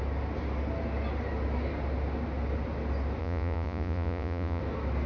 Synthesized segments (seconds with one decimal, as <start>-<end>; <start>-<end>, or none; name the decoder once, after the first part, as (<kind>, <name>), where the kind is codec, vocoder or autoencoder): 3.2-4.6 (vocoder, Vocos)